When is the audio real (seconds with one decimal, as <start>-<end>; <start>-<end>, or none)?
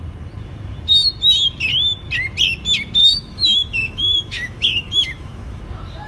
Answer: 0.0-3.0; 5.6-6.1